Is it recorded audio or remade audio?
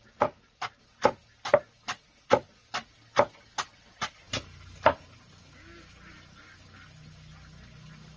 recorded